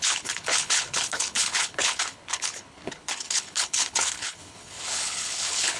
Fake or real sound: fake